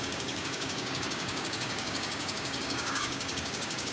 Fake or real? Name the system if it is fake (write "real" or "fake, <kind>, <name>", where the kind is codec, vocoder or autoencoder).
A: fake, codec, DAC